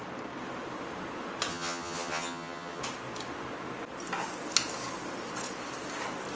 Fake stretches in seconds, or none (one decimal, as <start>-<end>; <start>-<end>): 1.5-2.8